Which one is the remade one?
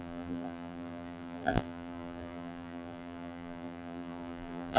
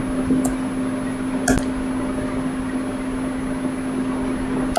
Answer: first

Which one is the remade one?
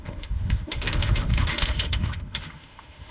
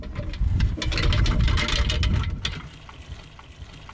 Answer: first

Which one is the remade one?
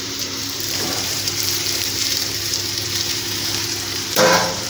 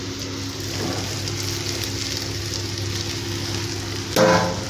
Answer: first